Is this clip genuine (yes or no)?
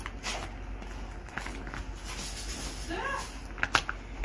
yes